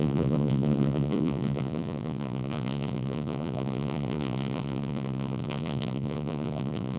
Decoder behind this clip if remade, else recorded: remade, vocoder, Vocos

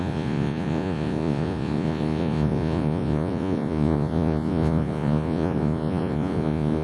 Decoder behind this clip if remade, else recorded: remade, vocoder, Vocos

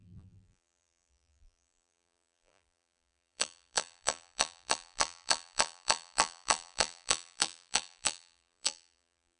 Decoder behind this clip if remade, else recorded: remade, vocoder, BigVGAN v2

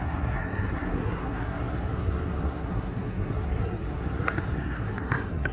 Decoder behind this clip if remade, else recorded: remade, codec, SNAC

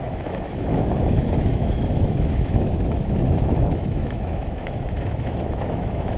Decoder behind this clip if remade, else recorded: remade, autoencoder, DAC-VAE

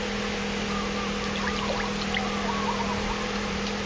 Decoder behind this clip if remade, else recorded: recorded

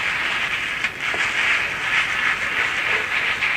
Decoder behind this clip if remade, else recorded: recorded